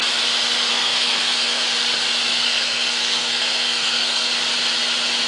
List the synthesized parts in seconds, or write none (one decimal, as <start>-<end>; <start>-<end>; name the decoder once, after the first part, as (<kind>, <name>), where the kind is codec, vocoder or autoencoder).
0.7-1.6 (codec, SNAC); 2.3-4.3